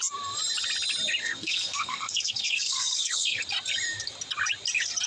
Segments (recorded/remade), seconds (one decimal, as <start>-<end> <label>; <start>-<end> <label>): 0.0-1.2 recorded; 1.2-3.4 remade; 3.4-5.1 recorded